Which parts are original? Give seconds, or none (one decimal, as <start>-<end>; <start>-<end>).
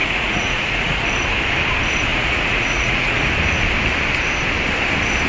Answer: 1.0-2.1; 3.2-5.3